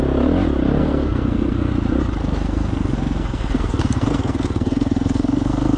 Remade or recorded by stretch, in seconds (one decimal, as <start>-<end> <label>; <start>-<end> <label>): 0.0-0.8 recorded; 0.8-1.7 remade; 1.7-2.2 recorded; 2.2-5.8 remade

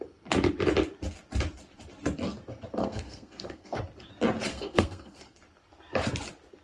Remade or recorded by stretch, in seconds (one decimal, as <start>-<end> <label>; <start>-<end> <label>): 0.0-2.8 recorded; 2.8-3.8 remade; 3.8-4.5 recorded; 4.5-5.4 remade; 5.4-6.6 recorded

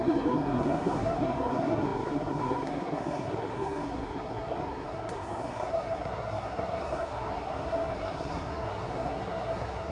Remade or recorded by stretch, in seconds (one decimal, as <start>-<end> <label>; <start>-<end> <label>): 0.0-9.9 remade